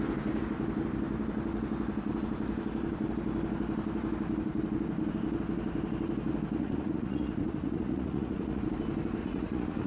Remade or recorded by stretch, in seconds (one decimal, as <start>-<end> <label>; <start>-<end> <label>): 0.0-6.6 recorded; 6.6-8.6 remade; 8.6-9.2 recorded; 9.2-9.9 remade